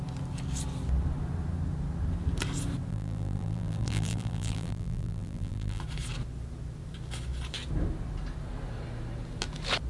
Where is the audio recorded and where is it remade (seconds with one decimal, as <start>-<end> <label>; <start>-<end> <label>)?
0.0-2.9 recorded; 2.9-5.8 remade; 5.8-9.9 recorded

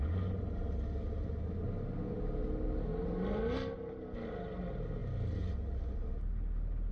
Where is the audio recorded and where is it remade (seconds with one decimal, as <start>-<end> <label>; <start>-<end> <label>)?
0.0-6.9 recorded

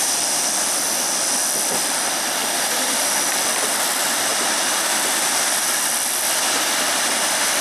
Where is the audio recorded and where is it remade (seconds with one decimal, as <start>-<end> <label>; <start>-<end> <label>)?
0.0-7.6 remade

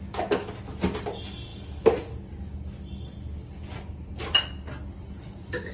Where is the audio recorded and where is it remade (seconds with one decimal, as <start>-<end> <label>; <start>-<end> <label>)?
0.0-5.7 recorded

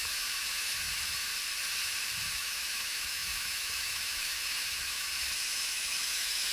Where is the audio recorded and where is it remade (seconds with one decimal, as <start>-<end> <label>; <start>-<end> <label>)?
0.0-1.3 remade; 1.3-2.3 recorded; 2.3-6.5 remade